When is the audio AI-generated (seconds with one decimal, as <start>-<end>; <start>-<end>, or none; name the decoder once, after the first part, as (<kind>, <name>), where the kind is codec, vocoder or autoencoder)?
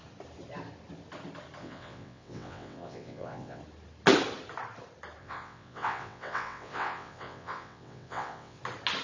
1.6-3.6 (vocoder, WaveNeXt); 5.2-8.6